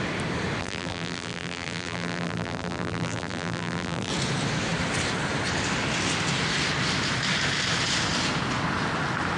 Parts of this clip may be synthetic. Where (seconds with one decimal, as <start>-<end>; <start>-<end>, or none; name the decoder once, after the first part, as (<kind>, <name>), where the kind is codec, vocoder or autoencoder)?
0.6-4.1 (vocoder, BigVGAN v2)